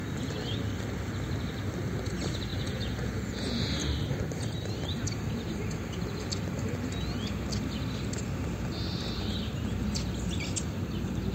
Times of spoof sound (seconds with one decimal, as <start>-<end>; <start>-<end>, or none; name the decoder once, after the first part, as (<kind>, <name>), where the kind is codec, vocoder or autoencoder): 2.5-3.6 (vocoder, Vocos)